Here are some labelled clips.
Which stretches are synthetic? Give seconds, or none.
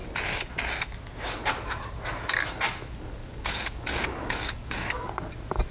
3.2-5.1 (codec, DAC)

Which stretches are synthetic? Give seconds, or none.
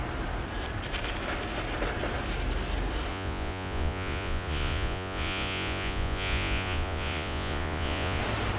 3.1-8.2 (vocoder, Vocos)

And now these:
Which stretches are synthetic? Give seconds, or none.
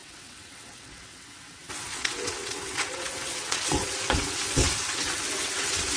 0.0-6.0 (vocoder, WaveNeXt)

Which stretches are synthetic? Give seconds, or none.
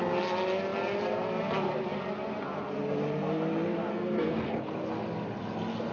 3.9-4.6 (codec, SNAC)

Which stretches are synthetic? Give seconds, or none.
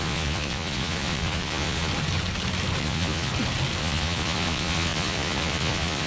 0.0-1.9 (vocoder, Vocos); 2.8-3.3; 3.8-6.1